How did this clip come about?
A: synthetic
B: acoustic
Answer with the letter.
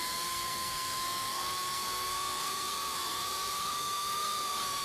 A